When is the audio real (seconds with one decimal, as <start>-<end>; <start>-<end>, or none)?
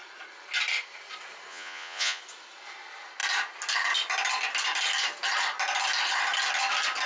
0.0-1.5; 2.2-7.1